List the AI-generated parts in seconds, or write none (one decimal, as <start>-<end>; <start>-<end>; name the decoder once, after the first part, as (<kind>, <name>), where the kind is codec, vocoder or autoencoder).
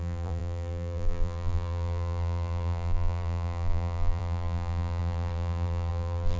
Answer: 0.0-6.4 (vocoder, BigVGAN v2)